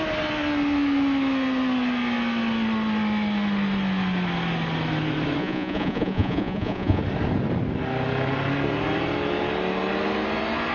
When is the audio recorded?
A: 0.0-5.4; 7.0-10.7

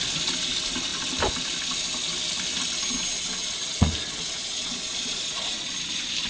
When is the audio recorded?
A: 0.0-3.4; 5.7-6.3

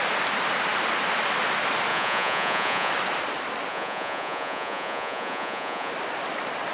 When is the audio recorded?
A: 0.0-1.9; 2.9-3.7; 5.9-6.7

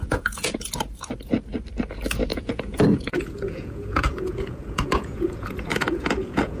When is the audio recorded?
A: 0.7-2.3

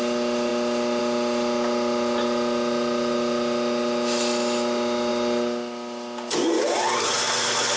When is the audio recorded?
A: 0.0-7.8

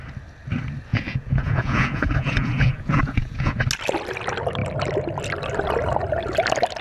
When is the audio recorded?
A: 0.0-0.9; 3.6-6.8

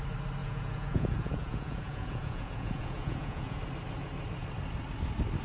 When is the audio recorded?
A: 0.0-0.4; 3.6-5.4